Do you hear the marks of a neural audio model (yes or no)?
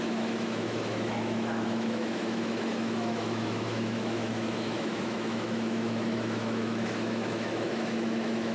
yes